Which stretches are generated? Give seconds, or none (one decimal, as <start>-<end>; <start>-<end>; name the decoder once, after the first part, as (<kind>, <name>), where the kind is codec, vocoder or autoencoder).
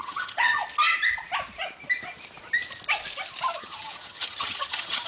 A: 0.0-0.6 (vocoder, HiFi-GAN); 3.6-5.1